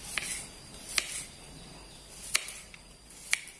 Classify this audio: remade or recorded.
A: recorded